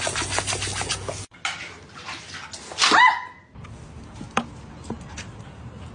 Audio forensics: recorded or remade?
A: recorded